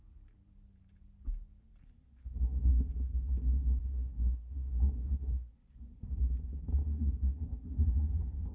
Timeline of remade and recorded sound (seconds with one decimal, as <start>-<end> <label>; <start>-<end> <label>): 0.0-1.8 recorded; 1.8-2.7 remade; 2.7-3.8 recorded; 3.8-6.2 remade; 6.2-6.8 recorded; 6.8-8.1 remade; 8.1-8.5 recorded